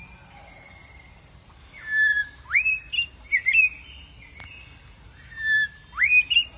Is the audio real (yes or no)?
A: yes